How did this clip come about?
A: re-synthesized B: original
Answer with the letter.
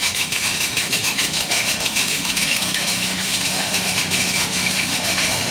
A